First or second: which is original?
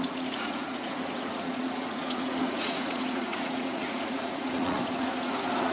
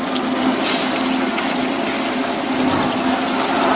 second